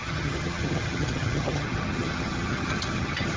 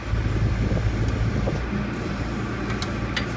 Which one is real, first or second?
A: second